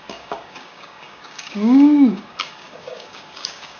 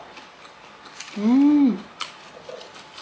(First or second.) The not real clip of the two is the first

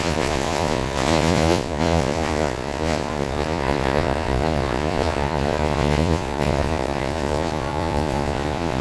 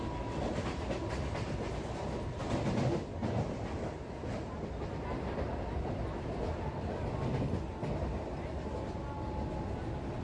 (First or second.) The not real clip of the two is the first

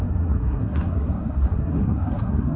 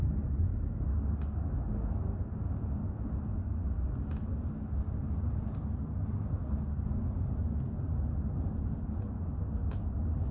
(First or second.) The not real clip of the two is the first